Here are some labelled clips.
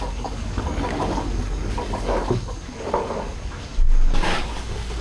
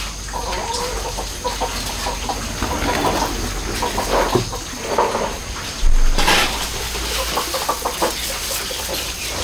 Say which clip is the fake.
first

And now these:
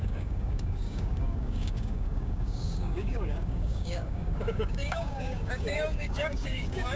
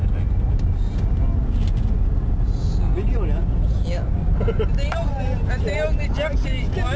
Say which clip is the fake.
first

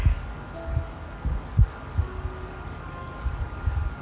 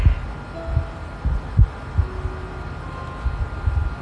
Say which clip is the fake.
first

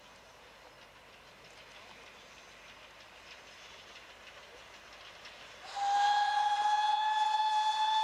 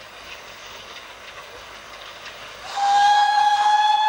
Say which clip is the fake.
second